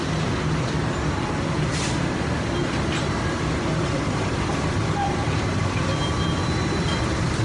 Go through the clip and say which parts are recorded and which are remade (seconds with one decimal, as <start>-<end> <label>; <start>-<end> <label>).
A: 0.0-7.4 remade